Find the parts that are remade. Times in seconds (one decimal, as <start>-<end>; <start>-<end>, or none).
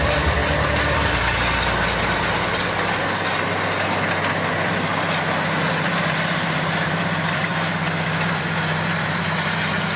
0.0-0.4; 4.5-4.9; 5.7-10.0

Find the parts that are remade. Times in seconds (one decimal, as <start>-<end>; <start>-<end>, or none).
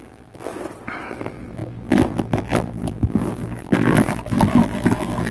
0.0-0.5; 1.1-5.3